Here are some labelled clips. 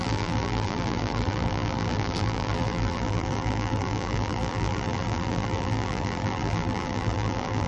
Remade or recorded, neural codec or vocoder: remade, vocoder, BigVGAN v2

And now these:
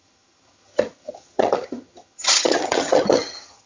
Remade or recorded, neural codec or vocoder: remade, vocoder, HiFi-GAN